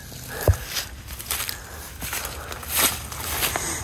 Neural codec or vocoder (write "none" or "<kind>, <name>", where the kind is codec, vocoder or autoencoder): none